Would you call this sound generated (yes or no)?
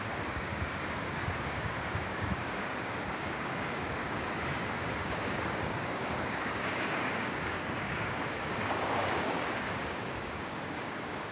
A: yes